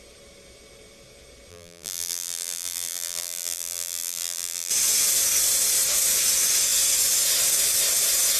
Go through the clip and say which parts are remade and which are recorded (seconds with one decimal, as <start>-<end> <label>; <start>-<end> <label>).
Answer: 0.0-1.5 recorded; 1.5-4.7 remade; 4.7-8.4 recorded